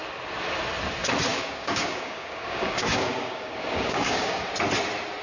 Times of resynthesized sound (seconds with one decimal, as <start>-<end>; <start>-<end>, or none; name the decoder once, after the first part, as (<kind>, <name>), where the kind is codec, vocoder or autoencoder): 1.3-4.4 (codec, DAC)